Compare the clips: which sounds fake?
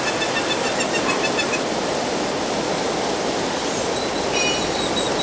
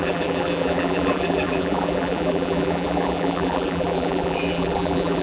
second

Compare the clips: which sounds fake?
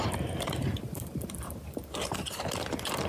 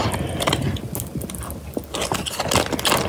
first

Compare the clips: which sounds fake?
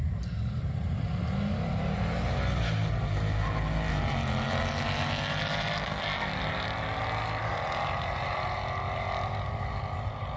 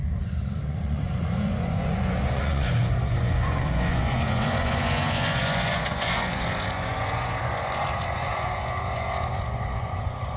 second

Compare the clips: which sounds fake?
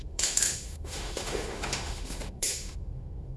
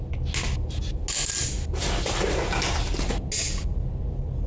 first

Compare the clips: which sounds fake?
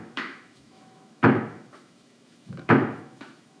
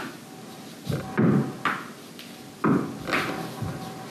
first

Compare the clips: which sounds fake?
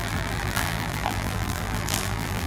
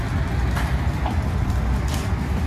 first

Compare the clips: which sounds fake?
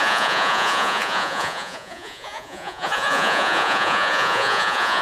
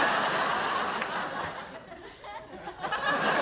first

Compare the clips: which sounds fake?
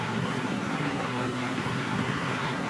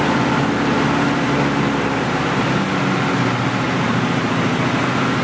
first